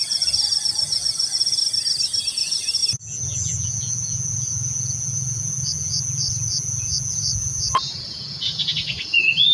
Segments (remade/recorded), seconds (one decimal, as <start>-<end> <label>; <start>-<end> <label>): 0.0-1.6 remade; 1.6-2.3 recorded; 2.3-9.5 remade